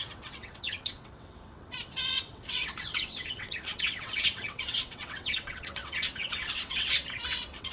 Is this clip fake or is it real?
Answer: fake